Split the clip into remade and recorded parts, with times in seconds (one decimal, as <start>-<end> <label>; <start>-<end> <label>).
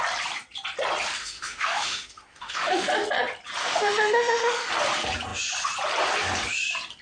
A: 0.0-1.2 recorded; 1.2-2.9 remade; 2.9-3.6 recorded; 3.6-4.7 remade; 4.7-7.0 recorded